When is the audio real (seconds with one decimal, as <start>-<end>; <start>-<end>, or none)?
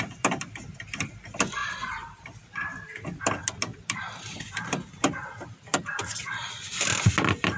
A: 0.0-1.6; 3.2-3.7; 6.5-7.6